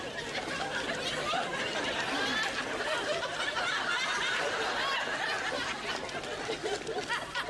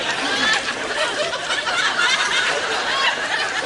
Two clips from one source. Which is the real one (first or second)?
first